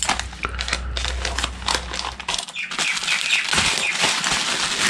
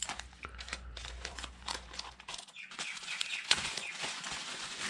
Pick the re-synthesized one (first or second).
second